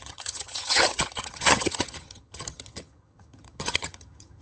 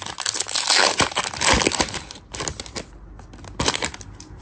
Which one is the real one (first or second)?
second